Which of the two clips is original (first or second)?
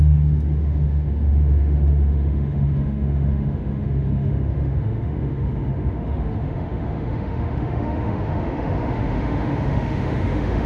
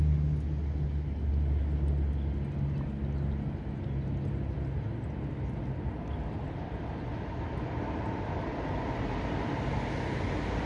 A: second